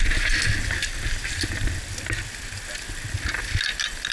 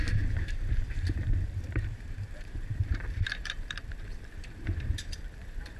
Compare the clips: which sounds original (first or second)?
first